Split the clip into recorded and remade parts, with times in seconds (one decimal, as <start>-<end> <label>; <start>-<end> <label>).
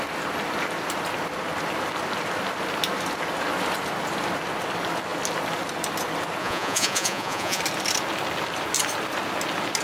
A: 0.0-6.4 recorded; 6.4-7.6 remade; 7.6-9.8 recorded